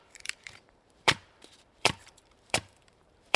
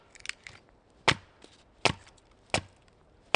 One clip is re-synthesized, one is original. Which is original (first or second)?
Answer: second